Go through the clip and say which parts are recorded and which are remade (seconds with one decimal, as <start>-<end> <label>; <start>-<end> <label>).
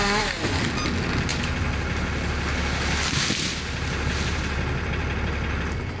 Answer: 0.0-6.0 recorded